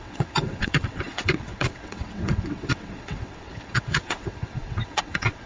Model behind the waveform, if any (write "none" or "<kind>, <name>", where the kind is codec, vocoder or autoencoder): vocoder, WaveNeXt